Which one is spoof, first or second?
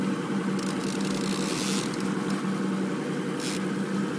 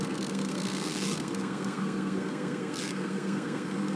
second